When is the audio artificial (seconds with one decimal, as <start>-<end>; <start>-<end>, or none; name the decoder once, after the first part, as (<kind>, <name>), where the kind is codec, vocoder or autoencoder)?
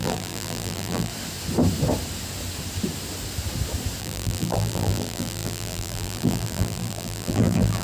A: 0.0-1.1 (vocoder, BigVGAN v2); 4.0-7.8